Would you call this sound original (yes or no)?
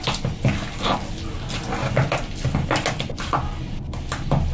yes